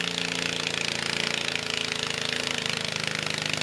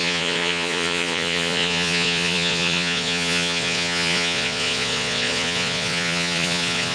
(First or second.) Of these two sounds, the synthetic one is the second